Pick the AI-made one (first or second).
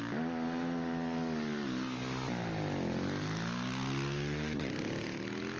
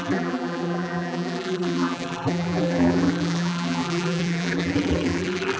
second